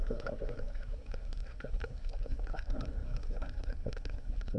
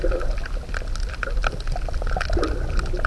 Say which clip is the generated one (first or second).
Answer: first